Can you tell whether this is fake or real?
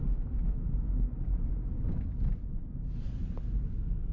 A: real